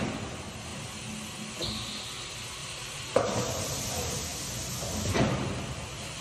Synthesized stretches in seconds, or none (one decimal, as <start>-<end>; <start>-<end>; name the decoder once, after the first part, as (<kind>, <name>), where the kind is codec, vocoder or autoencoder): 2.6-3.4 (vocoder, BigVGAN v2)